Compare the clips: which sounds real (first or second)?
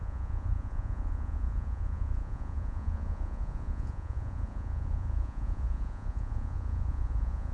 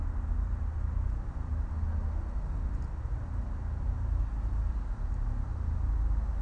second